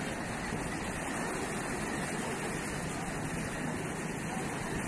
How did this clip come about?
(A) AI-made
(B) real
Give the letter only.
B